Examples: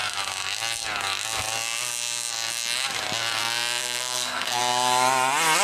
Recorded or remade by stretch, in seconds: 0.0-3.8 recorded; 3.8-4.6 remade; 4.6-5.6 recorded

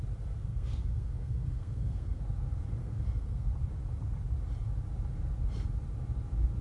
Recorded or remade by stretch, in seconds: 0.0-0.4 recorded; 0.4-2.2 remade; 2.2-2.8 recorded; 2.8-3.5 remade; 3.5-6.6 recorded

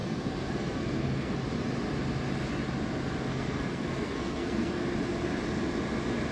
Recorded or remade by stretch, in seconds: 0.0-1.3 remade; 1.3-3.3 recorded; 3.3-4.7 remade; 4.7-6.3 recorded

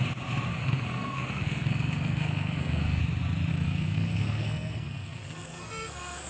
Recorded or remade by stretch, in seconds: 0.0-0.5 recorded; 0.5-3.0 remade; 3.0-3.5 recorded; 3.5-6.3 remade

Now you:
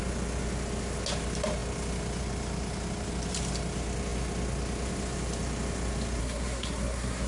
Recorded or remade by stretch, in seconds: 0.0-6.2 recorded; 6.2-7.3 remade